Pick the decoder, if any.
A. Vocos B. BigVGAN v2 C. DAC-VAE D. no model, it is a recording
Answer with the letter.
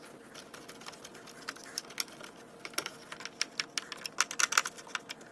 D